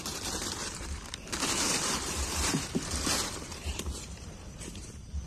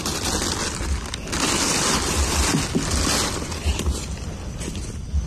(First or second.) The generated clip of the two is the first